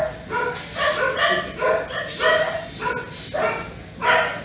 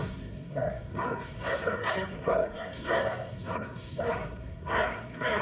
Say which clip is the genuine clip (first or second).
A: first